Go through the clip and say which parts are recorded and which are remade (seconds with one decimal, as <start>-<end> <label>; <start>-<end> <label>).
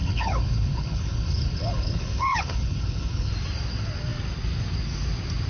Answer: 0.0-3.3 remade; 3.3-5.5 recorded